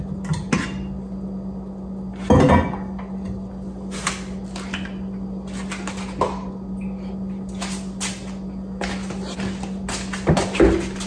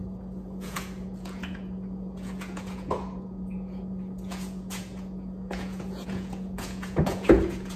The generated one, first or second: second